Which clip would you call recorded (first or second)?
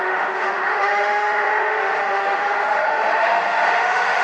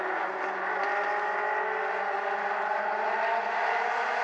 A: second